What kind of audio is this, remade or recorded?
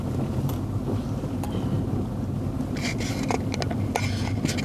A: recorded